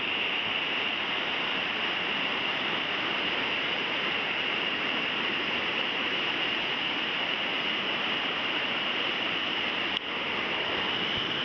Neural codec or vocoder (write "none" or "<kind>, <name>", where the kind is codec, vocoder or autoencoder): vocoder, BigVGAN v2